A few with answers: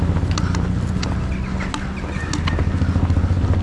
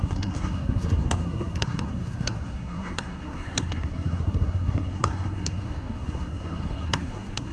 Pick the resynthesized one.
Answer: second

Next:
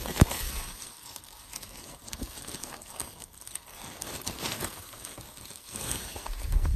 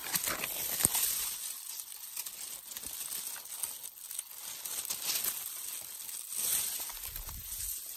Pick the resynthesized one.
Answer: first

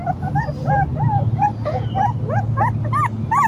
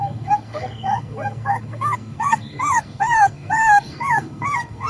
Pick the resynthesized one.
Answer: second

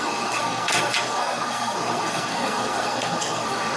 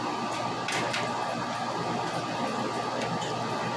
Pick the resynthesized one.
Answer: first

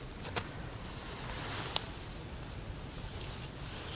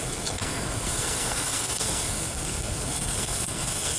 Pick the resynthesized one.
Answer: second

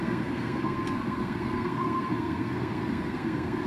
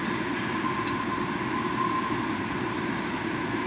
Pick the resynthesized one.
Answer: first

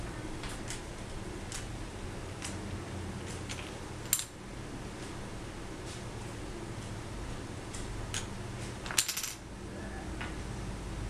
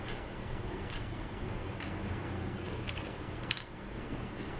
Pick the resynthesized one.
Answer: second